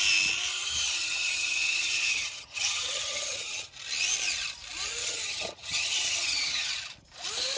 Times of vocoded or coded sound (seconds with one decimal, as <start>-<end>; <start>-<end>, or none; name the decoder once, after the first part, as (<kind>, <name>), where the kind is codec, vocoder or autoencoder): 0.5-3.7 (vocoder, HiFi-GAN); 5.0-6.7